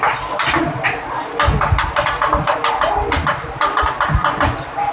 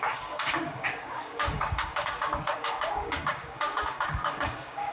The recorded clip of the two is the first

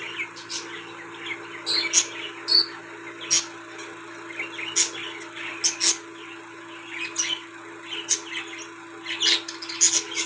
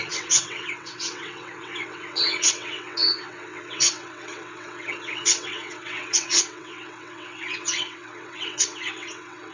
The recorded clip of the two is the first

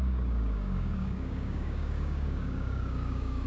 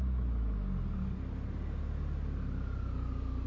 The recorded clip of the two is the second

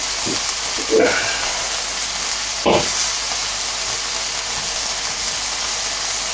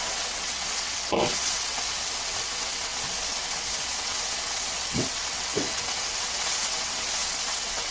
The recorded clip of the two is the first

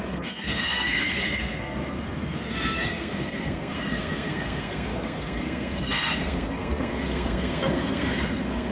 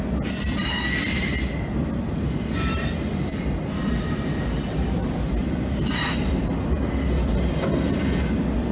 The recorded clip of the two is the second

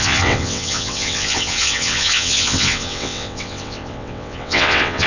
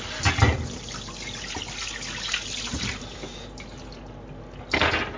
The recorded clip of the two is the second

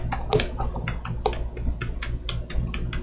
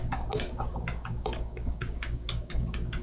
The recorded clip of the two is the first